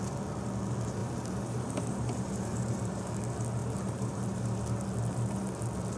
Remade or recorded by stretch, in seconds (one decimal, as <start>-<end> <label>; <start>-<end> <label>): 0.0-1.0 recorded; 1.0-3.1 remade; 3.1-3.6 recorded; 3.6-4.4 remade; 4.4-6.0 recorded